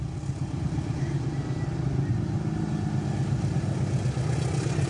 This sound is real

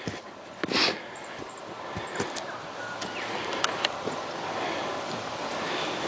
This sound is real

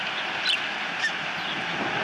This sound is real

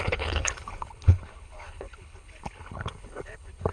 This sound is fake